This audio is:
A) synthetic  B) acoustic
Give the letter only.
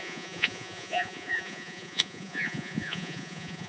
A